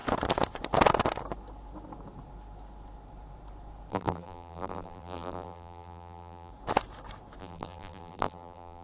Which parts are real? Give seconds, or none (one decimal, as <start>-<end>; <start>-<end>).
0.0-3.9; 6.5-7.4